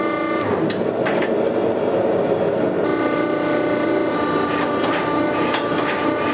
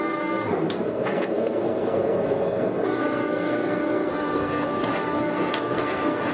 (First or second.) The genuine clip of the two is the first